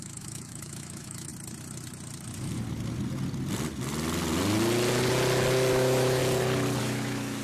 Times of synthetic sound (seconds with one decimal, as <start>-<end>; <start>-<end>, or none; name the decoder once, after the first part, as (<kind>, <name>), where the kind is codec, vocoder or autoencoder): 0.0-1.3 (autoencoder, DAC-VAE); 5.7-6.2; 6.8-7.4